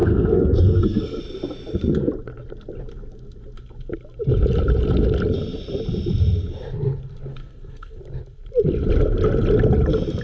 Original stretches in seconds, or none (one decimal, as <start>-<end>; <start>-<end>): 1.2-7.3; 8.0-10.2